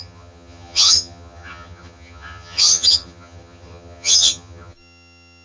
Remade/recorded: remade